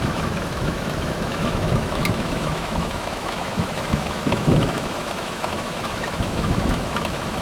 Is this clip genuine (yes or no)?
no